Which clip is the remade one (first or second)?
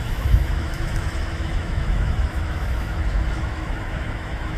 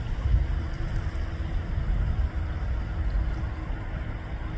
first